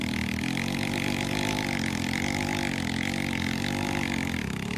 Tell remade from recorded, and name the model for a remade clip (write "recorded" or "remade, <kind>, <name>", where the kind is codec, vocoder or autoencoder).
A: recorded